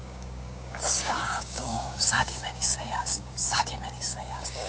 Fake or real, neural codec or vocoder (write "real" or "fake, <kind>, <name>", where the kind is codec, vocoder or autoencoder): fake, codec, DAC